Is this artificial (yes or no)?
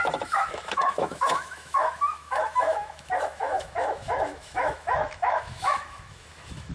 yes